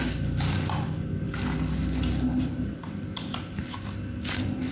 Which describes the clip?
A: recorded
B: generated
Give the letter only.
A